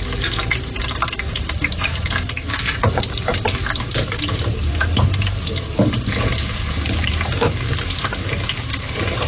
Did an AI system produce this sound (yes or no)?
yes